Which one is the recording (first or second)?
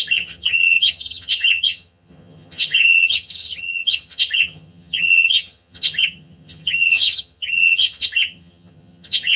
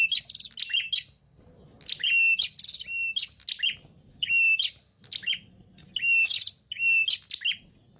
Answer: second